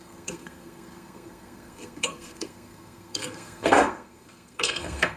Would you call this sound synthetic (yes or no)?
yes